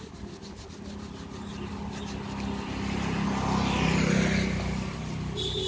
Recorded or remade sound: recorded